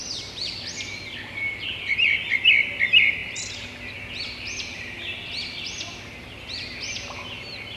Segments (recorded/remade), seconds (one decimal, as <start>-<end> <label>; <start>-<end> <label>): 0.0-7.8 recorded